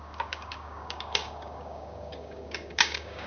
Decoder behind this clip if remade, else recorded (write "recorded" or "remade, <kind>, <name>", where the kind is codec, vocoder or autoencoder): remade, codec, DAC